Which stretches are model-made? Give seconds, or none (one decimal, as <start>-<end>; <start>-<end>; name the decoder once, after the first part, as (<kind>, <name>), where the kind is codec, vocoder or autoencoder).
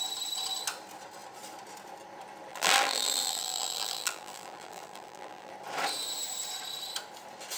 2.5-5.5 (vocoder, BigVGAN v2)